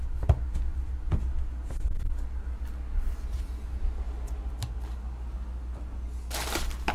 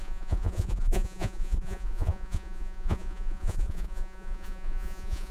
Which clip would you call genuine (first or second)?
first